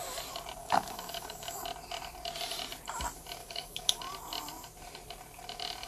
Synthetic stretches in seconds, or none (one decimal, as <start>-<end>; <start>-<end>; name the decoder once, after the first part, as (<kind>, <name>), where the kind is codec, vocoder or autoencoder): 0.6-1.6 (codec, DAC); 3.4-4.0